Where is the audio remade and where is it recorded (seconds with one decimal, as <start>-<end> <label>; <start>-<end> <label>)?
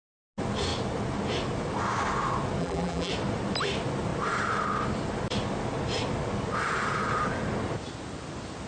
0.0-2.6 recorded; 2.6-3.1 remade; 3.1-8.7 recorded